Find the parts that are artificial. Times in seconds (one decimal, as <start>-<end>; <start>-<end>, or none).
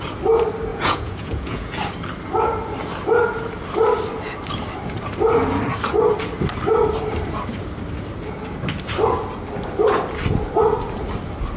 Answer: 0.7-1.7